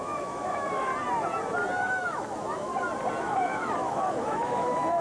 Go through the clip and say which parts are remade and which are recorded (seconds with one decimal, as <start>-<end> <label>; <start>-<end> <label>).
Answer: 0.0-0.9 remade; 0.9-1.8 recorded; 1.8-2.7 remade; 2.7-3.2 recorded; 3.2-5.0 remade